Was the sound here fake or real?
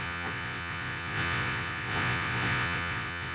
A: fake